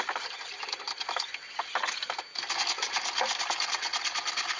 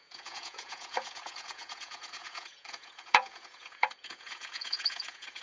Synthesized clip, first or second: second